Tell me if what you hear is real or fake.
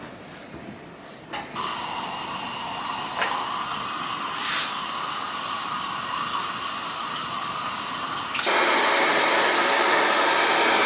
real